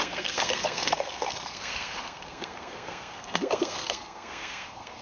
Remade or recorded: remade